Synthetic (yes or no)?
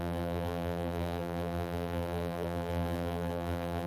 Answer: yes